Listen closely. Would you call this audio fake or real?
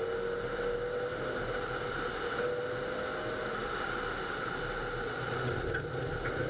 real